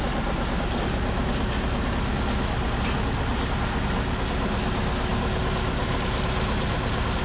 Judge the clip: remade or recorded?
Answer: recorded